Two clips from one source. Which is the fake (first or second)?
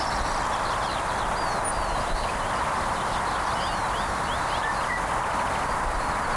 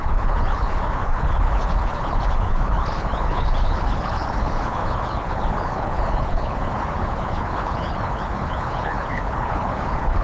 second